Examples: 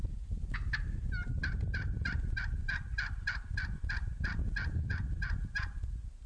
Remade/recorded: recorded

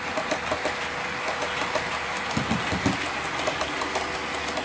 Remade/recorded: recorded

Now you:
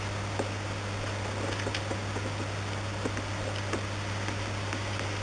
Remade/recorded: recorded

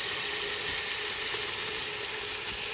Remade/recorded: recorded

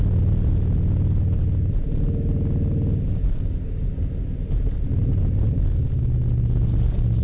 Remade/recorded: recorded